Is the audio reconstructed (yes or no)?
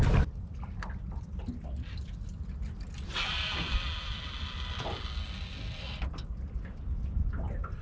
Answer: no